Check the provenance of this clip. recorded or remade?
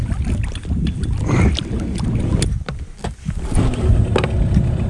recorded